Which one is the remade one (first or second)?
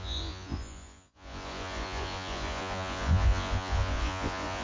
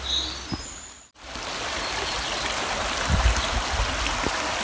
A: first